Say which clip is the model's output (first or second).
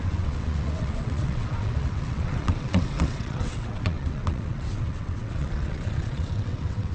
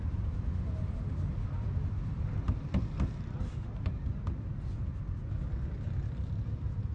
first